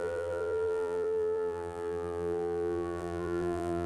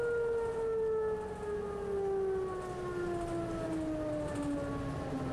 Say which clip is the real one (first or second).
second